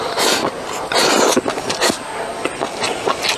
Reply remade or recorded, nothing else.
recorded